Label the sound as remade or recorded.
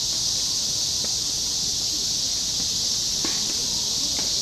recorded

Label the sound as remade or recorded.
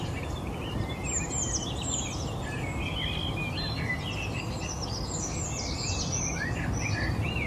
recorded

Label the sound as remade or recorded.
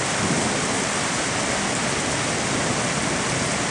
recorded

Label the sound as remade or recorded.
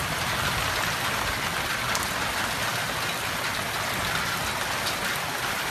recorded